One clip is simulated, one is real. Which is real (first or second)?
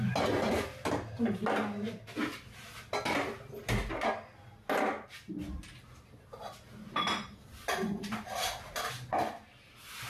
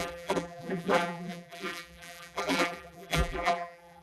first